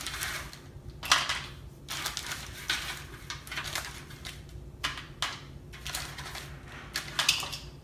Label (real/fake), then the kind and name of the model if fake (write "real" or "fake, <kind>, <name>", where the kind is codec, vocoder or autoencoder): real